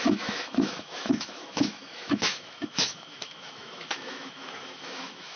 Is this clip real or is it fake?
fake